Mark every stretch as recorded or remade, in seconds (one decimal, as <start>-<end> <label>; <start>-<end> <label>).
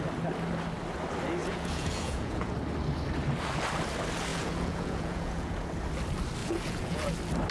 0.0-1.4 recorded; 1.4-2.5 remade; 2.5-4.3 recorded; 4.3-5.7 remade; 5.7-6.4 recorded; 6.4-7.1 remade; 7.1-7.5 recorded